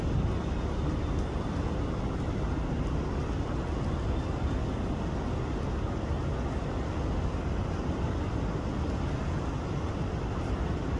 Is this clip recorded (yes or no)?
yes